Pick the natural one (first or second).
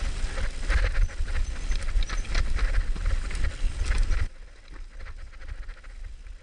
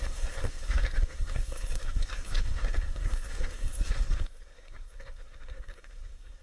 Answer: first